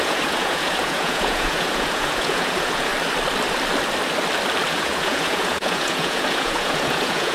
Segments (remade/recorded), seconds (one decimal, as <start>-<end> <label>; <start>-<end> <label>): 0.0-2.9 remade; 2.9-4.7 recorded; 4.7-7.3 remade